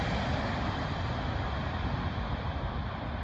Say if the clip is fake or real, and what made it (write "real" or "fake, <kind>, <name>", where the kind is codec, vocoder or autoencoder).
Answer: real